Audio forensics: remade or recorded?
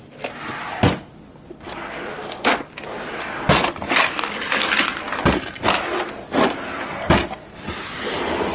recorded